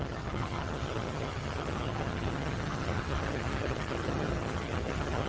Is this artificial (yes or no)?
yes